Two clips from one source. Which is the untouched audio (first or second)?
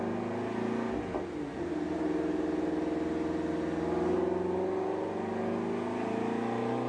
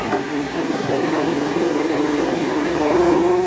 first